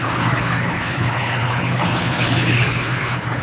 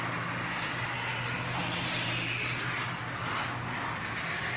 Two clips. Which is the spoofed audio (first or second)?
first